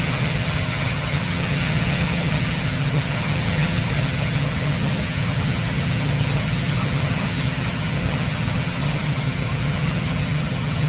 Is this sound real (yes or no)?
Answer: no